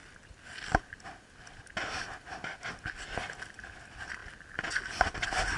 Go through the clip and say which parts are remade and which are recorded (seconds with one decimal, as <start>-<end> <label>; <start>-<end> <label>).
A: 0.0-5.6 recorded

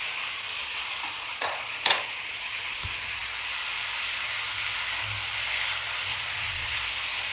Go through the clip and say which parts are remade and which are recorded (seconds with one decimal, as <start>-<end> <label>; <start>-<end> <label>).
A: 0.0-0.6 recorded; 0.6-2.8 remade; 2.8-6.1 recorded; 6.1-6.8 remade; 6.8-7.3 recorded

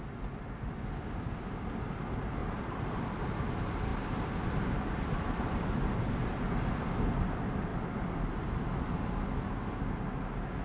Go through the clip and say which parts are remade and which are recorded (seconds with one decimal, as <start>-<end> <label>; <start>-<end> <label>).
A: 0.0-2.4 recorded; 2.4-3.0 remade; 3.0-3.9 recorded; 3.9-5.5 remade; 5.5-7.7 recorded; 7.7-8.3 remade; 8.3-10.6 recorded

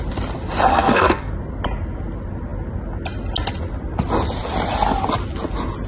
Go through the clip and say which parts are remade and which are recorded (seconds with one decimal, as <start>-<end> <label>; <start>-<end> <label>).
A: 0.0-0.7 recorded; 0.7-1.3 remade; 1.3-5.9 recorded

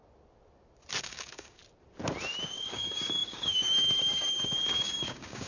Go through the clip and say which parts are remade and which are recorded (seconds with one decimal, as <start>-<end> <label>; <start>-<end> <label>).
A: 0.0-1.0 recorded; 1.0-1.6 remade; 1.6-2.5 recorded; 2.5-5.5 remade